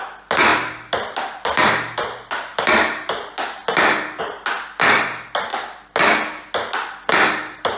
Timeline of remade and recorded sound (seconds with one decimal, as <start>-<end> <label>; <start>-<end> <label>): 0.0-7.8 recorded